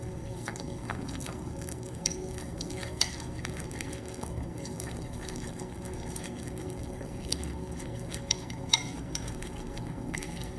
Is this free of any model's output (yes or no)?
no